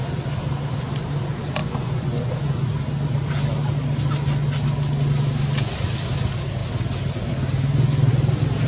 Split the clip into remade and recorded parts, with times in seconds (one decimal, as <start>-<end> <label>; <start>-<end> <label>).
0.0-1.6 recorded; 1.6-2.7 remade; 2.7-8.7 recorded